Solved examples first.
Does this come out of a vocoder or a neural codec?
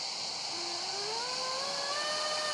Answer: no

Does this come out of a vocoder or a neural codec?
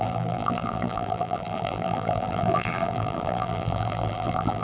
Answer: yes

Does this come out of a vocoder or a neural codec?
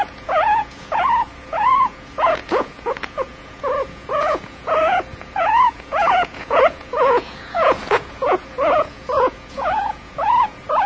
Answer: yes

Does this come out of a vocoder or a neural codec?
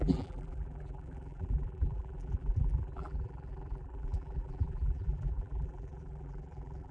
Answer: yes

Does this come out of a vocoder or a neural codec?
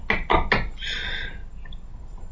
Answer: no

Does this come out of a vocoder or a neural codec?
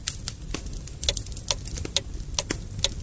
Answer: no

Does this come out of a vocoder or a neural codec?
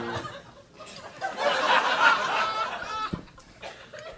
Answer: no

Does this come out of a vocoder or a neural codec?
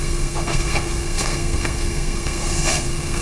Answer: yes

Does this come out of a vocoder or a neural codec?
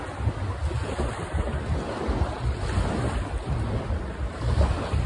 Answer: no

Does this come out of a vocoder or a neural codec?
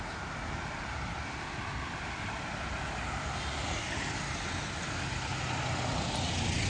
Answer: no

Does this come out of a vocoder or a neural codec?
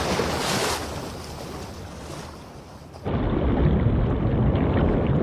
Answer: no